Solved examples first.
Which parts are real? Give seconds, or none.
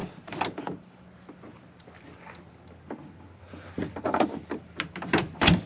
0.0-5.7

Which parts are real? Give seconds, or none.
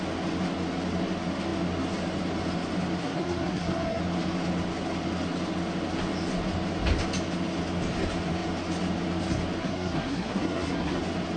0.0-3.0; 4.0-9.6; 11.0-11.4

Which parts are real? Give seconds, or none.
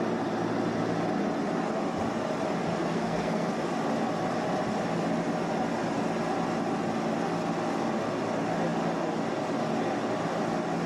0.0-2.8; 3.5-10.9